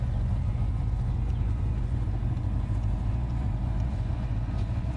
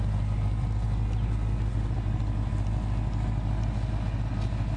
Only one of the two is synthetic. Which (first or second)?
first